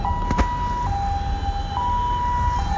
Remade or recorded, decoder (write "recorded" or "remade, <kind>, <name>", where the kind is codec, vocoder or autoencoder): recorded